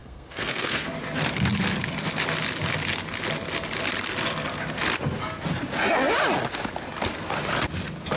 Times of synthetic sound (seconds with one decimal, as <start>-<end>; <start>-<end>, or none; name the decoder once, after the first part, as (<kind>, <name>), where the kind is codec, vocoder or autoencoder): 0.0-0.9 (codec, SNAC)